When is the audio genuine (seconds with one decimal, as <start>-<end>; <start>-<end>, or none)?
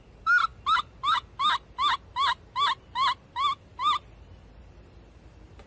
0.0-5.7